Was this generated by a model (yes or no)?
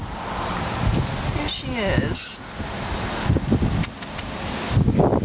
no